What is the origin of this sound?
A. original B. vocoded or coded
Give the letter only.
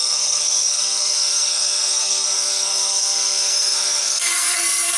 B